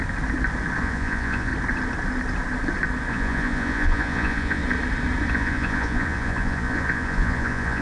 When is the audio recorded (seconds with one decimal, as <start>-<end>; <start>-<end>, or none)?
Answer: 0.0-0.8; 1.5-3.1; 4.6-5.3